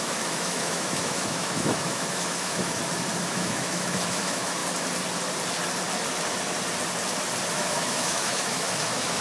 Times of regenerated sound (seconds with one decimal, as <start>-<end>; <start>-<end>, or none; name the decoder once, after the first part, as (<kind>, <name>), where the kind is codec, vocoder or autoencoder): 0.0-2.8 (autoencoder, DAC-VAE); 3.3-4.6; 7.5-9.2